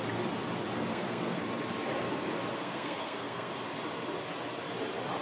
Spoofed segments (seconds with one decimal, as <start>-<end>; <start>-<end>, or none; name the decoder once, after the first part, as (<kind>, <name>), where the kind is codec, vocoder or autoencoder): 0.9-1.4 (codec, SNAC); 2.5-3.5